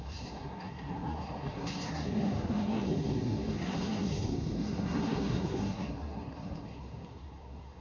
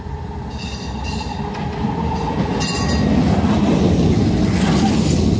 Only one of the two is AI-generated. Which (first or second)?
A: first